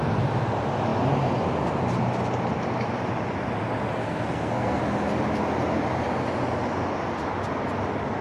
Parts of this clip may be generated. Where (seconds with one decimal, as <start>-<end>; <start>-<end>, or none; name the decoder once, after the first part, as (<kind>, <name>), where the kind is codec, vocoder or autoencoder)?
4.0-4.8 (codec, SNAC)